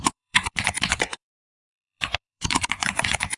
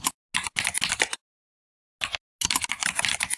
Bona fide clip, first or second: second